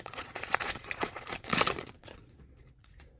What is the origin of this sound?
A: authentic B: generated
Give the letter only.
B